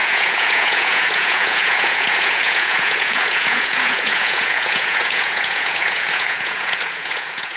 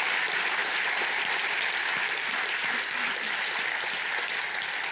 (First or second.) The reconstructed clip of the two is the first